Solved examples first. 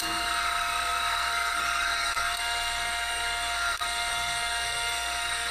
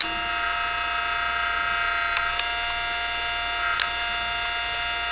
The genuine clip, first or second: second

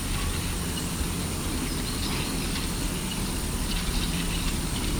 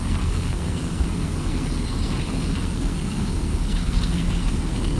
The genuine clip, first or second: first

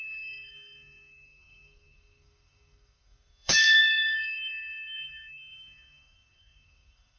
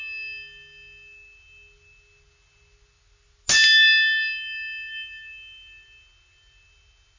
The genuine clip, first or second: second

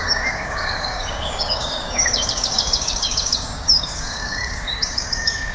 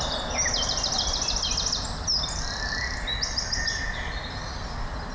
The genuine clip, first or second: second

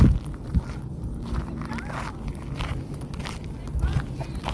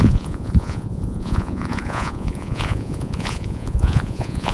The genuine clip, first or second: first